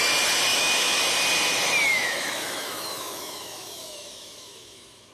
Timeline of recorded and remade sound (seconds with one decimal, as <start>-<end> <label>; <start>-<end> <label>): 0.0-0.5 recorded; 0.5-1.0 remade; 1.0-1.9 recorded; 1.9-5.1 remade